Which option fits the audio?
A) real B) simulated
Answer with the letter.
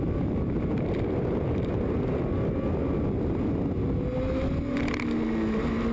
A